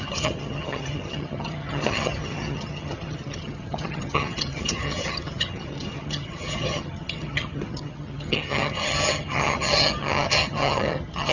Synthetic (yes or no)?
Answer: yes